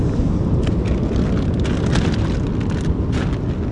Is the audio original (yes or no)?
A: yes